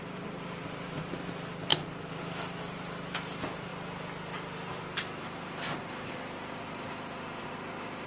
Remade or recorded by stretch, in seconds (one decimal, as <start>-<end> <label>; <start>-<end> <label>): 0.0-3.7 remade; 3.7-5.2 recorded; 5.2-8.1 remade